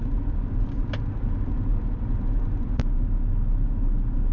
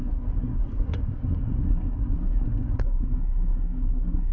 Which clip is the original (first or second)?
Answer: first